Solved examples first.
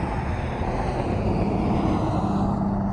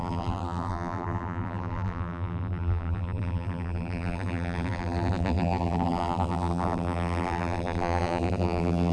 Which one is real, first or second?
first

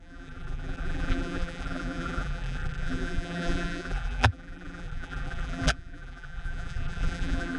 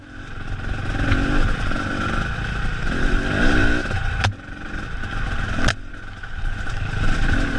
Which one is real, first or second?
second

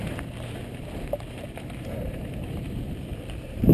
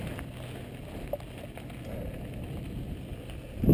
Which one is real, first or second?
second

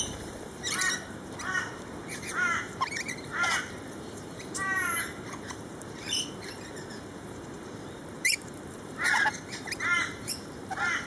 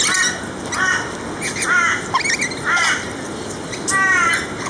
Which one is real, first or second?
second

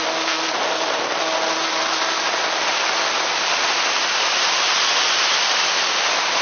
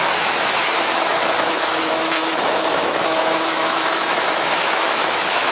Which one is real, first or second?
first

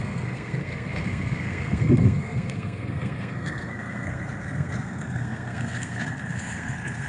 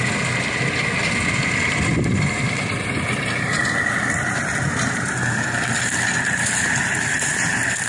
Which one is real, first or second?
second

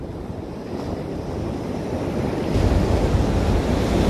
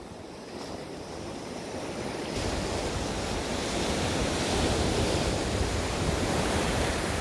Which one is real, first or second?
first